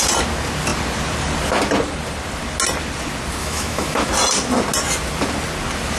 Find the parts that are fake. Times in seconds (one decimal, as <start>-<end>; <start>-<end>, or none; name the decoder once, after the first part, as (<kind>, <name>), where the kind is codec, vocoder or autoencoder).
3.4-4.1 (autoencoder, DAC-VAE)